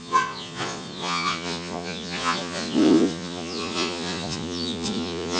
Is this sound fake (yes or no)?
yes